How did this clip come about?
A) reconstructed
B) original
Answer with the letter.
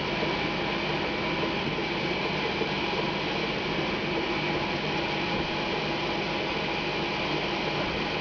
B